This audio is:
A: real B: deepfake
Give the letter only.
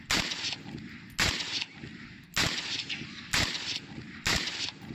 A